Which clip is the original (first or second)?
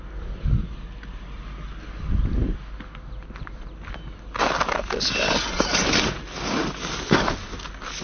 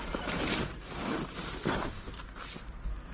first